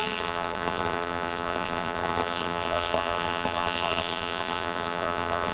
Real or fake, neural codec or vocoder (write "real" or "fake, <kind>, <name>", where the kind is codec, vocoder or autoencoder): fake, vocoder, BigVGAN v2